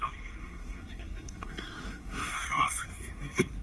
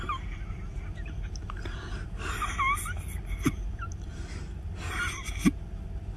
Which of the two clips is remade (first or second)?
first